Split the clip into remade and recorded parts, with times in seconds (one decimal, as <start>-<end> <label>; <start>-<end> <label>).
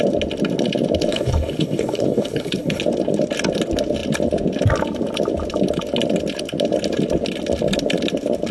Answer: 0.0-1.1 recorded; 1.1-2.8 remade; 2.8-8.5 recorded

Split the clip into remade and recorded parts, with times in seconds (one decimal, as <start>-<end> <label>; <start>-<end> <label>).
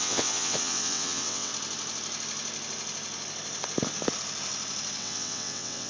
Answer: 0.0-1.5 remade; 1.5-5.0 recorded; 5.0-5.9 remade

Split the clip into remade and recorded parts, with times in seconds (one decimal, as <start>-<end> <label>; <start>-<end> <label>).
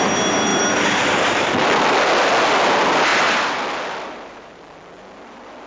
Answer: 0.0-5.7 recorded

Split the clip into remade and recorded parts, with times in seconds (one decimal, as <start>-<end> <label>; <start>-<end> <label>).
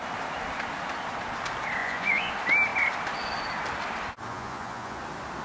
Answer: 0.0-1.8 recorded; 1.8-2.3 remade; 2.3-4.3 recorded; 4.3-5.0 remade; 5.0-5.4 recorded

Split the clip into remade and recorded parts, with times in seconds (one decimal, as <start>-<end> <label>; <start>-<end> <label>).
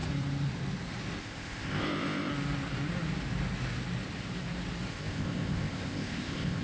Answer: 0.0-1.2 recorded; 1.2-2.3 remade; 2.3-4.9 recorded; 4.9-6.6 remade